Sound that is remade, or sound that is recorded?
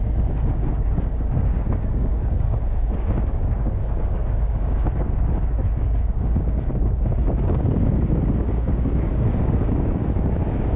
remade